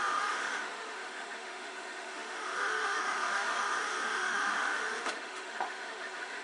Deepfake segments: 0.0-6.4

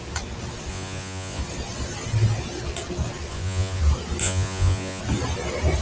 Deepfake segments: 0.7-1.4; 3.3-3.8; 4.2-5.0

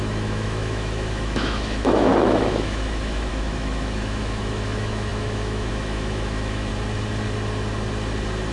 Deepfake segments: 0.0-6.7

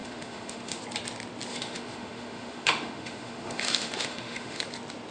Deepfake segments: 0.0-0.8; 1.5-4.6

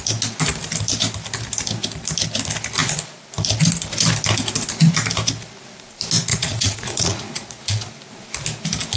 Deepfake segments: 6.3-7.9

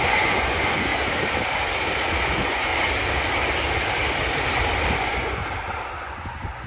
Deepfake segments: 0.0-0.9; 2.3-2.7; 4.9-5.4; 6.0-6.7